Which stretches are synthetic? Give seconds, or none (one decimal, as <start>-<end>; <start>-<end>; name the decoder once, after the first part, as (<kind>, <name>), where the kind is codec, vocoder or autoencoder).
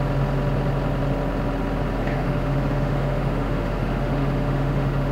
2.0-5.1 (autoencoder, DAC-VAE)